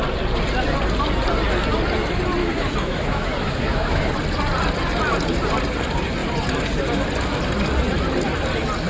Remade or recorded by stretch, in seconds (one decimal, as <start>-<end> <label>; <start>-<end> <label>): 0.0-2.4 recorded; 2.4-4.1 remade; 4.1-8.9 recorded

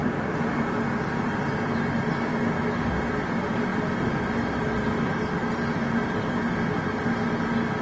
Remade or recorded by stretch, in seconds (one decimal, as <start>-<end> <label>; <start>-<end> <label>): 0.0-2.3 recorded; 2.3-2.9 remade; 2.9-7.8 recorded

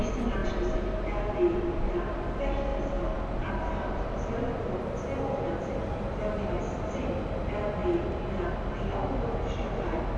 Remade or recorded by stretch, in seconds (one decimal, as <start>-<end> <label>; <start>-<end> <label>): 0.0-10.2 recorded

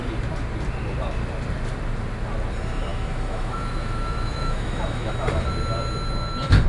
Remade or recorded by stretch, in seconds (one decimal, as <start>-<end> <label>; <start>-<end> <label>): 0.0-2.9 recorded; 2.9-5.1 remade; 5.1-6.7 recorded

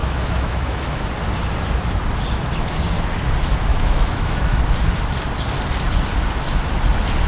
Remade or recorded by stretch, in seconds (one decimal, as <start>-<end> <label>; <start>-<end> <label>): 0.0-1.1 remade; 1.1-3.7 recorded; 3.7-4.6 remade; 4.6-7.3 recorded

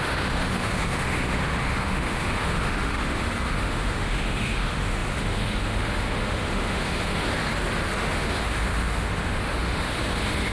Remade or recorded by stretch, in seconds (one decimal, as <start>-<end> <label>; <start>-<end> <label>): 0.0-7.4 remade; 7.4-8.1 recorded; 8.1-10.5 remade

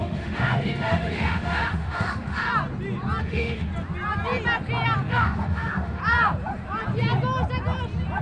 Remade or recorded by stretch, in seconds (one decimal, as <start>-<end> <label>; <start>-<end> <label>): 0.0-2.5 remade; 2.5-3.2 recorded; 3.2-3.7 remade; 3.7-5.1 recorded; 5.1-6.0 remade; 6.0-8.2 recorded